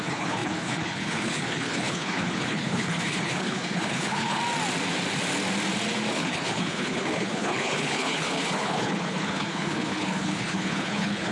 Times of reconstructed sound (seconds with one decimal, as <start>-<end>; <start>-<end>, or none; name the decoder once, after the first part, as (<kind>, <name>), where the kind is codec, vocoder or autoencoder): 0.0-4.4 (codec, HILCodec); 6.1-11.3